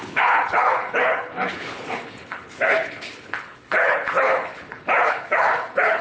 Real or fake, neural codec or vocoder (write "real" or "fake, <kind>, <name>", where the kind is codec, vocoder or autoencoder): fake, codec, HILCodec